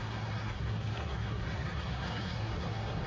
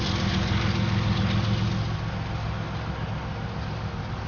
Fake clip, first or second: first